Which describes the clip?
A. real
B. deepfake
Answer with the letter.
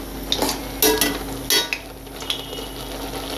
A